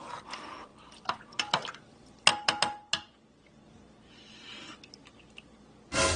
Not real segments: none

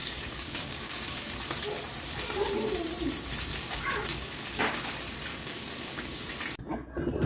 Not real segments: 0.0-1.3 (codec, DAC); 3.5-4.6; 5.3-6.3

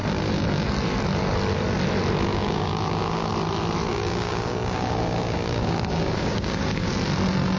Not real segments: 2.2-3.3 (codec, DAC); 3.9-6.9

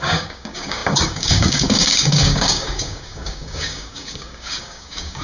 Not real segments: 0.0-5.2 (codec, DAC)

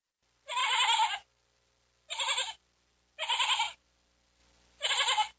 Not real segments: none

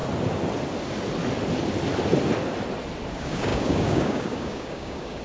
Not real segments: 3.1-5.2 (codec, DAC)

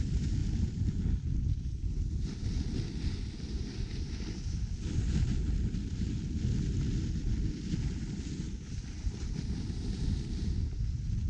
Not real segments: none

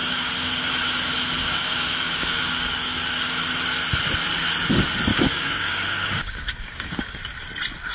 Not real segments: 0.0-0.7 (codec, DAC); 1.4-3.4; 5.1-7.2